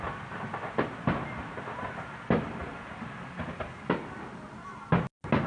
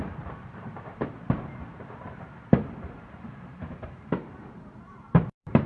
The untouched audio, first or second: first